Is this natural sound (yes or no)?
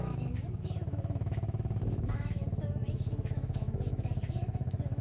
no